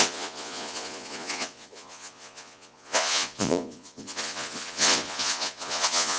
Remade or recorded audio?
remade